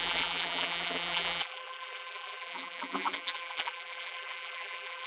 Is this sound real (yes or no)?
no